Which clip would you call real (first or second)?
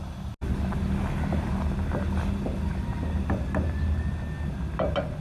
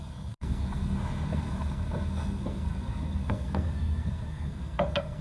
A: first